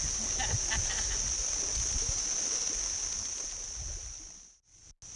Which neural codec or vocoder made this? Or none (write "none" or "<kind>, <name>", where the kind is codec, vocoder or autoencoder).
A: none